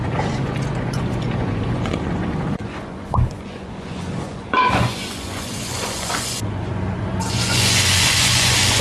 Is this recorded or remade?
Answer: remade